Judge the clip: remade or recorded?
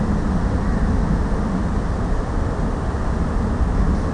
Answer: recorded